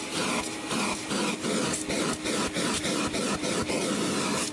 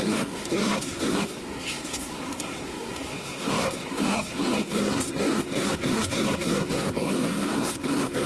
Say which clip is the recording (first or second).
first